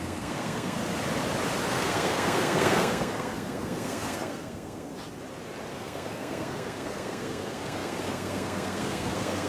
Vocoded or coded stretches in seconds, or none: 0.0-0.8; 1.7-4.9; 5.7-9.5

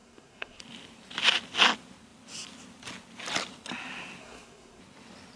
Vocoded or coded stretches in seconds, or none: 0.0-0.6; 4.2-4.8

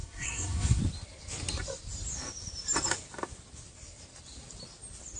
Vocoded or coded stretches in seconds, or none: 0.0-0.8

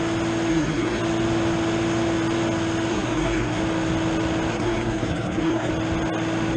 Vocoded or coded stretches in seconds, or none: 0.5-1.0; 2.9-3.6; 4.5-5.7

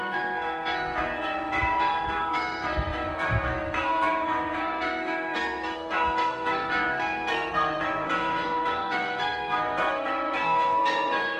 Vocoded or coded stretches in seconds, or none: 0.0-11.4

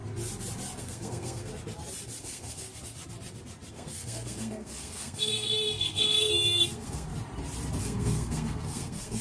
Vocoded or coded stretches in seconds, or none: 0.8-1.5; 2.2-2.7; 3.7-7.1; 7.8-9.2

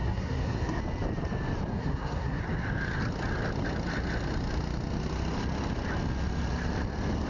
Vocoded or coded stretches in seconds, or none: 0.0-0.8; 1.7-2.4